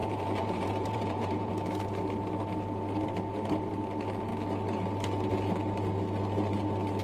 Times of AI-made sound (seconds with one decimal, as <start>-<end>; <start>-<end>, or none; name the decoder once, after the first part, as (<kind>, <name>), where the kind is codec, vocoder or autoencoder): 0.0-1.5 (vocoder, Vocos)